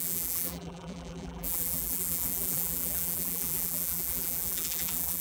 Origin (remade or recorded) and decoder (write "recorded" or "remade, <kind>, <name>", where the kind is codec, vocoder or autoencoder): remade, vocoder, BigVGAN v2